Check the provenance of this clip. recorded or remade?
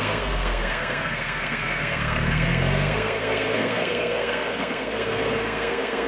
remade